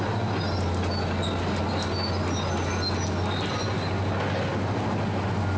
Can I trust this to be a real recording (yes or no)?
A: yes